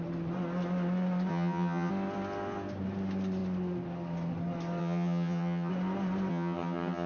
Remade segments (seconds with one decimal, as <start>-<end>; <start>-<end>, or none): 1.3-1.9; 4.8-5.7; 6.3-7.1